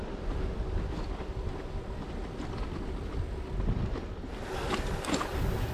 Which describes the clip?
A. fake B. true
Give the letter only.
B